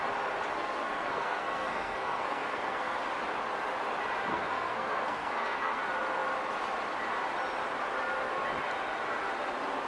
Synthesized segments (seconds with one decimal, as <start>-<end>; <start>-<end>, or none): 0.5-3.0; 4.3-5.8